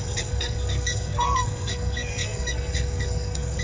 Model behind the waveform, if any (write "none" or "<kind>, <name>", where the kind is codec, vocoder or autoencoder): codec, SNAC